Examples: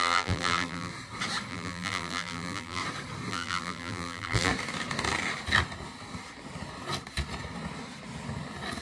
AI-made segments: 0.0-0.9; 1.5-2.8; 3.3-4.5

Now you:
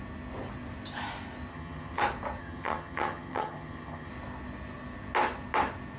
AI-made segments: 1.5-2.0; 2.4-4.1

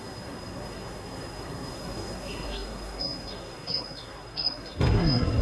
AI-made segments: 0.0-5.4

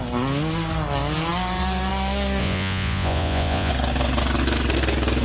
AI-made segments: 2.4-3.7

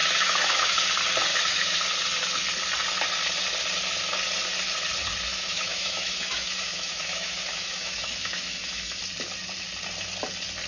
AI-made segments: 0.0-0.9; 1.3-1.8; 5.3-9.0

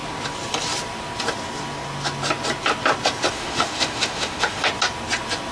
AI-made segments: 3.3-4.7

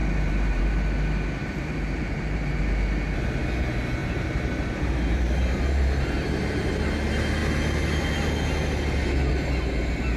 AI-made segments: 0.0-0.6; 1.4-2.6; 4.0-6.7